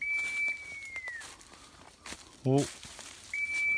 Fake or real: real